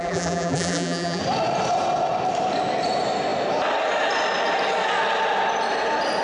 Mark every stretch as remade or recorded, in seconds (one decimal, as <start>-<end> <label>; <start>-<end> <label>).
0.0-1.2 remade; 1.2-6.2 recorded